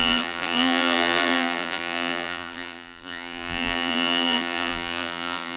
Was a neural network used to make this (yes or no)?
yes